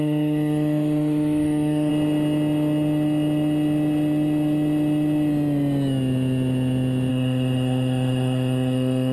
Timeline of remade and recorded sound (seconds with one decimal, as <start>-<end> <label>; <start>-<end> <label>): 0.0-1.9 remade; 1.9-7.1 recorded; 7.1-9.1 remade